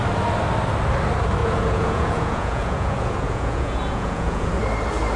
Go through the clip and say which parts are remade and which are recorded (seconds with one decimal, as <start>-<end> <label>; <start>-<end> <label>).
0.0-1.4 recorded; 1.4-4.5 remade; 4.5-5.2 recorded